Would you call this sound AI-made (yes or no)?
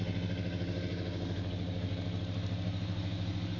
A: no